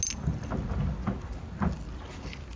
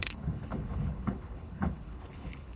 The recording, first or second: first